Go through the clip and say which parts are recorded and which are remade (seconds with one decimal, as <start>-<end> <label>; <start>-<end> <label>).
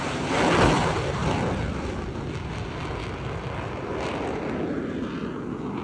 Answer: 0.0-5.8 recorded